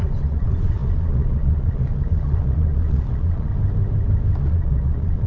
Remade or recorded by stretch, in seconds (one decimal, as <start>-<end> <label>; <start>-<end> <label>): 0.0-3.5 remade; 3.5-4.4 recorded; 4.4-5.3 remade